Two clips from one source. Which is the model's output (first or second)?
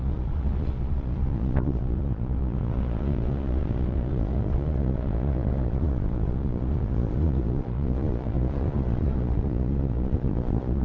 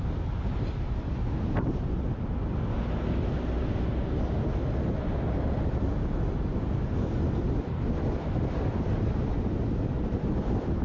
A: first